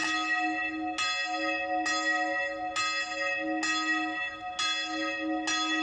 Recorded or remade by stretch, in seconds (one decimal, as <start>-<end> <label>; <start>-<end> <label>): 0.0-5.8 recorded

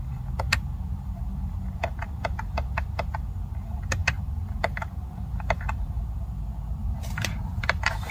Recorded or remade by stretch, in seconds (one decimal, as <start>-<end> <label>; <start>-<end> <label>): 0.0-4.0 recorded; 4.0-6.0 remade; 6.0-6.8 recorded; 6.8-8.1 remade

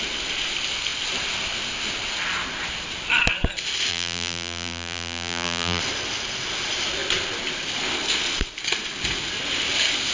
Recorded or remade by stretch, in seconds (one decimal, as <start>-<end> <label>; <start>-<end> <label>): 0.0-3.9 recorded; 3.9-5.8 remade; 5.8-10.1 recorded

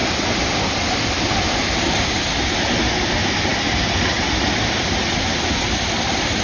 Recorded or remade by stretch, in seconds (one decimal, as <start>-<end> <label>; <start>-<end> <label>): 0.0-6.4 recorded

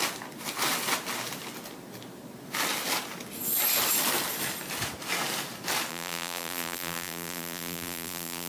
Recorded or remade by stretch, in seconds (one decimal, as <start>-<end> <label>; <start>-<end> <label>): 0.0-5.9 recorded; 5.9-8.5 remade